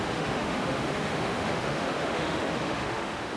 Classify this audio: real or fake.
fake